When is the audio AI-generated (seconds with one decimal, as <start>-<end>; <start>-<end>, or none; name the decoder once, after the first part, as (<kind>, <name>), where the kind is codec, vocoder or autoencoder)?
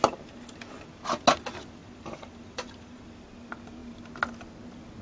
1.8-3.0 (vocoder, BigVGAN v2)